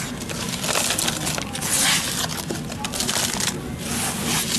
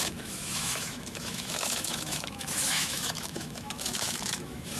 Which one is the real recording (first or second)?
first